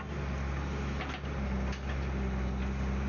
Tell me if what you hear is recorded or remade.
recorded